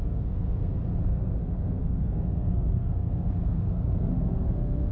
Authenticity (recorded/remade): remade